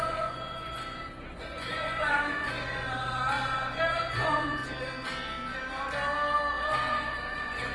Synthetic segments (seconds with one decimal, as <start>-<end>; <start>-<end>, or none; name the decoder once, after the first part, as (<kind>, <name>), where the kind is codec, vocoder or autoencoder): 0.0-4.6 (vocoder, Vocos); 6.6-7.7